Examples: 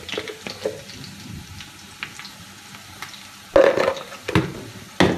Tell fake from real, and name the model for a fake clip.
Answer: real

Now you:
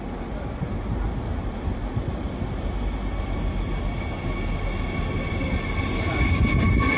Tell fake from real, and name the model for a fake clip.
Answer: real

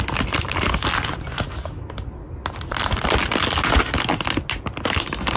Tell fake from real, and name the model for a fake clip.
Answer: real